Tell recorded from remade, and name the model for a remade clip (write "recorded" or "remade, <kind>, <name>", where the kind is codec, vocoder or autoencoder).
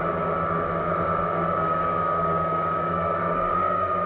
remade, codec, DAC